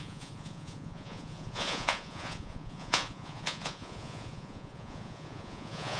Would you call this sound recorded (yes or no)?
no